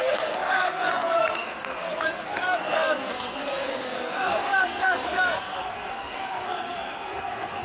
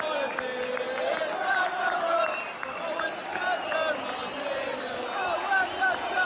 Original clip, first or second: second